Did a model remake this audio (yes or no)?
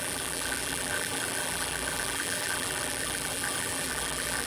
yes